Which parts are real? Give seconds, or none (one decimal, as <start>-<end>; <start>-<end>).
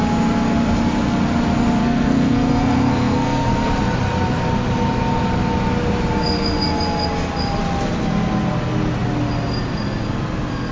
0.0-1.8; 3.7-10.7